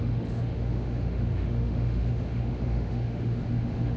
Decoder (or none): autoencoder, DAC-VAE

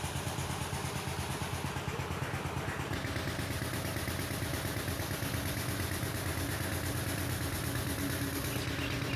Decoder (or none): none